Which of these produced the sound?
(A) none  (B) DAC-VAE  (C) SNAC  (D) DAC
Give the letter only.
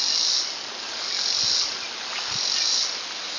A